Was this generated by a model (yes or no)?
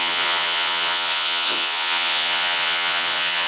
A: yes